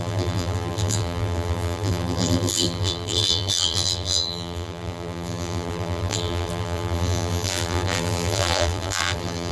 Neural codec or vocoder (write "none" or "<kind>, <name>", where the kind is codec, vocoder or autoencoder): vocoder, BigVGAN v2